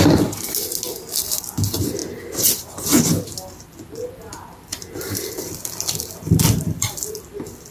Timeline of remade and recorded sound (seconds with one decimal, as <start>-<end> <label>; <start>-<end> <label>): 0.0-4.7 recorded; 4.7-7.2 remade; 7.2-7.7 recorded